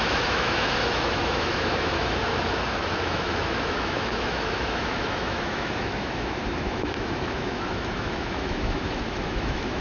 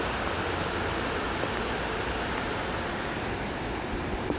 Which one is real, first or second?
second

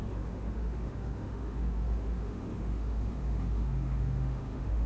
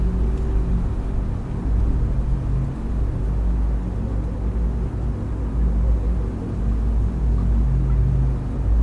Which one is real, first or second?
second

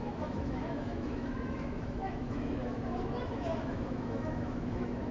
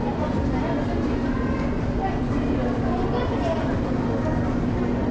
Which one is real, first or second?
second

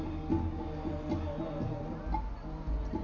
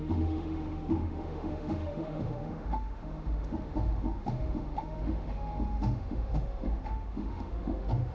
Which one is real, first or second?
first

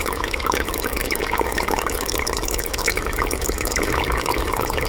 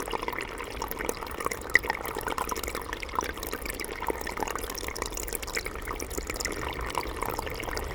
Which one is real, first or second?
second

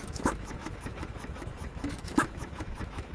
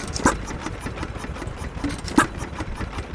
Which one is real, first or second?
second